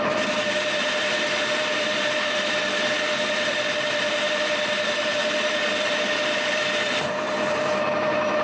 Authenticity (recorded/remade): remade